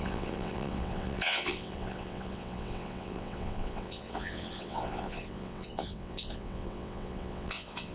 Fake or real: fake